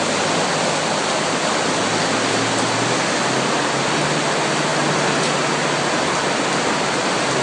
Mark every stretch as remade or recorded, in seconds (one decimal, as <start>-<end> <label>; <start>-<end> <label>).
0.0-7.4 recorded